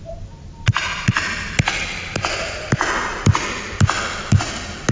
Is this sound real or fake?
real